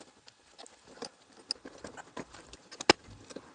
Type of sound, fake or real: real